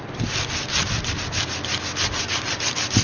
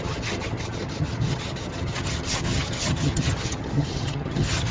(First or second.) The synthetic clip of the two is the second